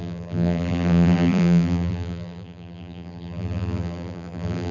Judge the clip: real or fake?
fake